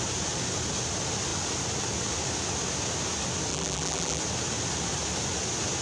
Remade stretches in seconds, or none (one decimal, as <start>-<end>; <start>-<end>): 3.5-4.2